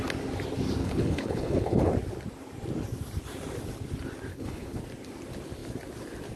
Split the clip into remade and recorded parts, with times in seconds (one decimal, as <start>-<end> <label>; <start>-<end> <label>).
0.0-0.8 recorded; 0.8-1.9 remade; 1.9-4.3 recorded; 4.3-4.8 remade; 4.8-6.4 recorded